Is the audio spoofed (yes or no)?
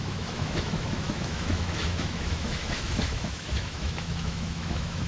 yes